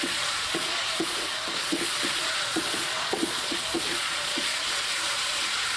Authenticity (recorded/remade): remade